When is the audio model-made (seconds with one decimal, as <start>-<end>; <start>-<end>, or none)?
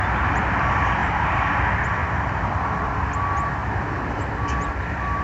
1.0-1.6; 2.0-3.1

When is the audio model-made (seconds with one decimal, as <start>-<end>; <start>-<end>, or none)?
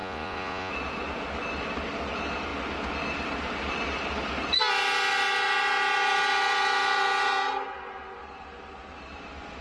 0.0-0.7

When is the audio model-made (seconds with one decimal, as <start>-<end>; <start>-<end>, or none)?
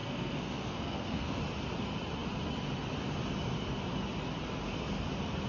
0.0-1.4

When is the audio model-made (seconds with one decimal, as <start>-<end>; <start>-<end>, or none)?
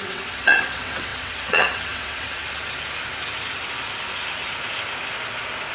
0.0-2.4